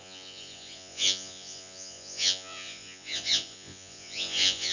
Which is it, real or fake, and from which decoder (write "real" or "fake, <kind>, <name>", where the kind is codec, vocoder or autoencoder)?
fake, vocoder, Vocos